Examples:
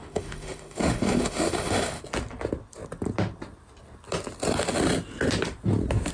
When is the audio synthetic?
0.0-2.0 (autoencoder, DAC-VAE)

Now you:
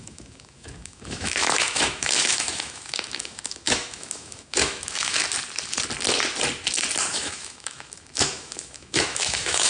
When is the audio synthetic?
0.0-5.2 (autoencoder, DAC-VAE); 7.1-9.7